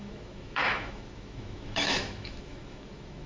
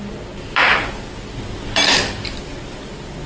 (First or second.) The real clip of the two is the second